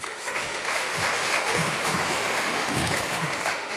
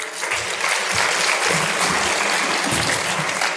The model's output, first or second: first